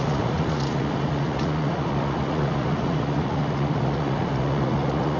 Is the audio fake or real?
fake